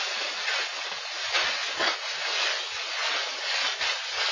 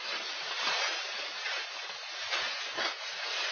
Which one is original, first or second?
first